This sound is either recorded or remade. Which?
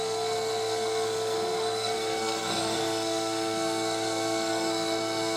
remade